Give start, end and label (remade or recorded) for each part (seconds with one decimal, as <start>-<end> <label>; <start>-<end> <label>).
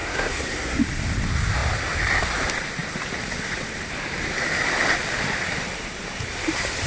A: 0.0-0.8 remade; 0.8-6.9 recorded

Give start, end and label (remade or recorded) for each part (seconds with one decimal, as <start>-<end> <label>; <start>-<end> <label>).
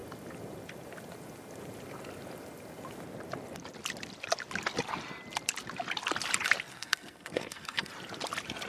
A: 0.0-6.7 recorded; 6.7-7.9 remade; 7.9-8.7 recorded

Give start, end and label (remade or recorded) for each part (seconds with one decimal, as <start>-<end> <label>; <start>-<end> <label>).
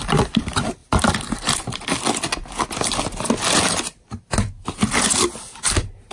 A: 0.0-6.1 recorded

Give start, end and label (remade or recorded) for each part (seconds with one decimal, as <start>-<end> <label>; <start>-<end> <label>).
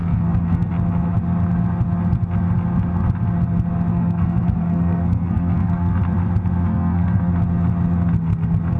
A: 0.0-0.7 remade; 0.7-3.9 recorded; 3.9-6.0 remade; 6.0-6.7 recorded; 6.7-7.3 remade; 7.3-8.8 recorded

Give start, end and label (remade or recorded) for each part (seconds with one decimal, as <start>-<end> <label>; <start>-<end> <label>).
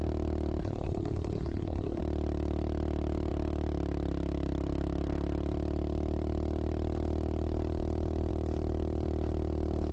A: 0.0-0.6 recorded; 0.6-2.0 remade; 2.0-9.9 recorded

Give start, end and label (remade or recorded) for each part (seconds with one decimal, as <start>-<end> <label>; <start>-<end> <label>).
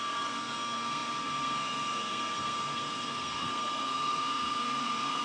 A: 0.0-5.2 remade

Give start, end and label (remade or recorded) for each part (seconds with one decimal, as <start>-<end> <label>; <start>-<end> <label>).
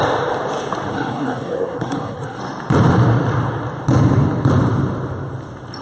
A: 0.0-0.9 recorded; 0.9-2.4 remade; 2.4-5.8 recorded